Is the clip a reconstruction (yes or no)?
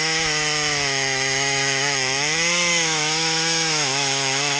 yes